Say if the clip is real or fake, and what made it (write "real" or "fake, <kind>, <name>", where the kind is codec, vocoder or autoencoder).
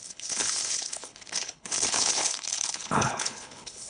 fake, codec, HILCodec